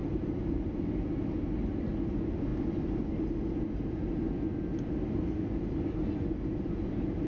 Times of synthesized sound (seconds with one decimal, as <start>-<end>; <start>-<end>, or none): 0.0-0.9